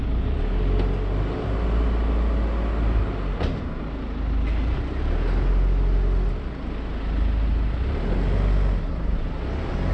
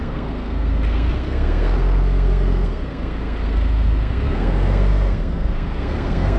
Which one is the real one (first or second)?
first